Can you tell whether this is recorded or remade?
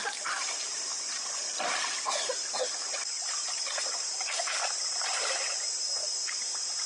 recorded